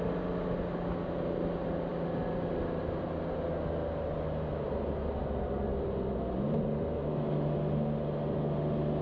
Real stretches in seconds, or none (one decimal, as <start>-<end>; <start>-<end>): 0.0-9.0